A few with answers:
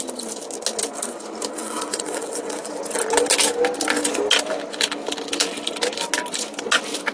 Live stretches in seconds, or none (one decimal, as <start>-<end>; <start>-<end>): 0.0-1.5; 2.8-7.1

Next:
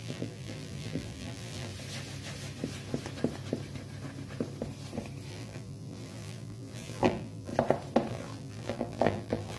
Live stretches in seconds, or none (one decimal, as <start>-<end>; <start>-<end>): 1.7-5.3; 7.5-8.1

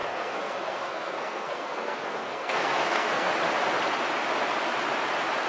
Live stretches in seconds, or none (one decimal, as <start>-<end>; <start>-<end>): 3.3-5.5